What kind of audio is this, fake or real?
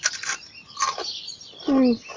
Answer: real